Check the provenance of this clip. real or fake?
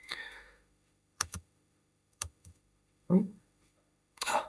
fake